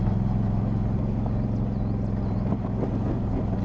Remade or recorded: recorded